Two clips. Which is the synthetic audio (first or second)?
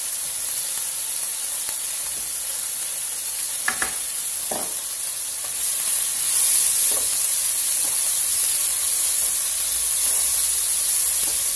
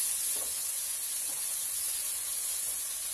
second